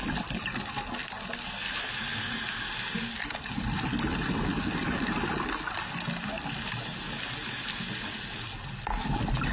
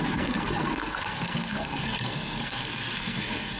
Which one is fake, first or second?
second